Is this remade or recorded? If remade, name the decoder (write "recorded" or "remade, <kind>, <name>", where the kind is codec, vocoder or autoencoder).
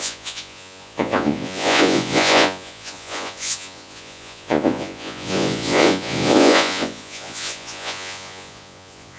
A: remade, vocoder, Vocos